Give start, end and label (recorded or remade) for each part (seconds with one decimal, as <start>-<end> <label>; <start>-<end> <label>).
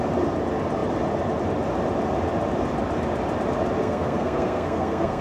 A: 0.0-3.8 recorded; 3.8-5.2 remade